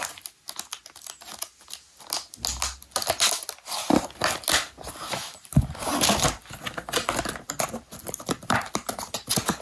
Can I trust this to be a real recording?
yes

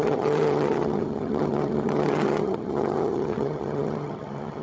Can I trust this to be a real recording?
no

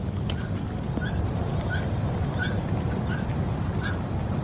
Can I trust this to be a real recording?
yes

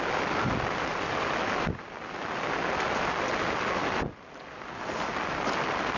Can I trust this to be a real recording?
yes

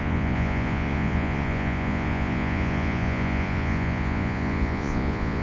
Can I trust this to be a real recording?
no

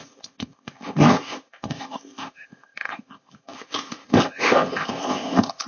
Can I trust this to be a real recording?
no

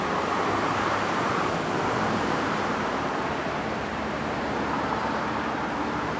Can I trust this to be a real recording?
no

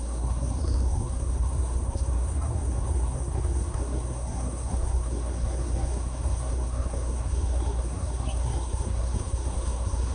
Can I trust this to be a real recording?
no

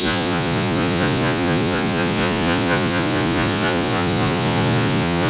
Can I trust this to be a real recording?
no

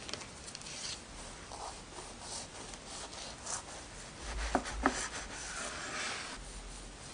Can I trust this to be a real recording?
yes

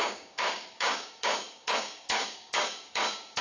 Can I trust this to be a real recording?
no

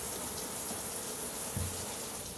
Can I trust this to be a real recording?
yes